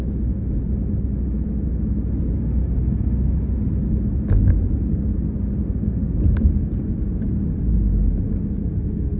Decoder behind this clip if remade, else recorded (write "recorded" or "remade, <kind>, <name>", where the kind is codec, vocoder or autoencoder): recorded